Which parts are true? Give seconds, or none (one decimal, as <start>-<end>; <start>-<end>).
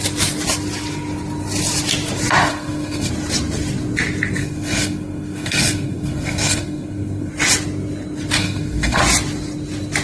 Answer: 0.0-2.5; 3.1-4.4; 7.3-8.4; 9.0-10.0